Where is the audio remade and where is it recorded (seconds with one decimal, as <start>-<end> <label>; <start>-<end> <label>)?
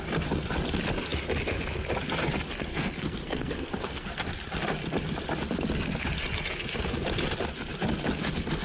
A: 0.0-2.7 recorded; 2.7-4.2 remade; 4.2-8.6 recorded